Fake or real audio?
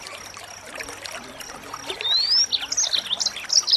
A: real